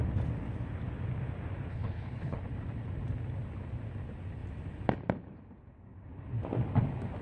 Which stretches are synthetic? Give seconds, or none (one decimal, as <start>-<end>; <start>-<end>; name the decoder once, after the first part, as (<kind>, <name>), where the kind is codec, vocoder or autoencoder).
1.7-2.4 (codec, HILCodec)